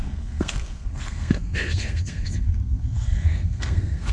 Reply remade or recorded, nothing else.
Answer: remade